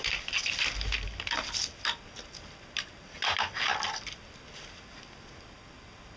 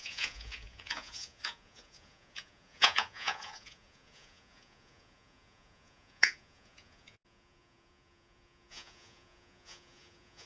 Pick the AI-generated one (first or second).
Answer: second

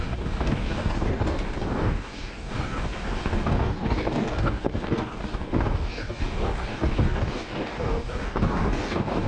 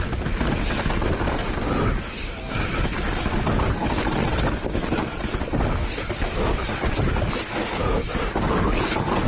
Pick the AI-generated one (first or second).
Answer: first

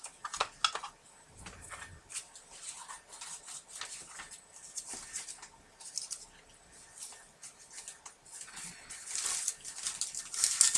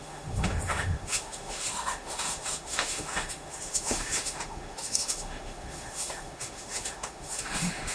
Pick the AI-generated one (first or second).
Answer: second